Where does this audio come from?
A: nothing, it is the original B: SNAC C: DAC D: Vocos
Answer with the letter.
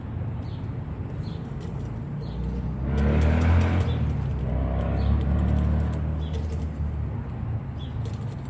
A